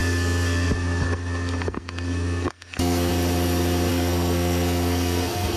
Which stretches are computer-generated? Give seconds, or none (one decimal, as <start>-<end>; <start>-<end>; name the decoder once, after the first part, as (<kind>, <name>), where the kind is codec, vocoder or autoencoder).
0.0-3.1 (codec, SNAC); 3.9-5.6